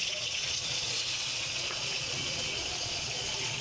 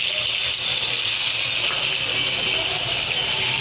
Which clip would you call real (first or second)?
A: second